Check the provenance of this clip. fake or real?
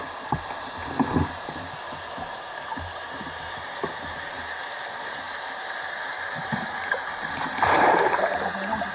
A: fake